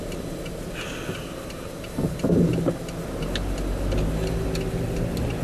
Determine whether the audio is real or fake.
real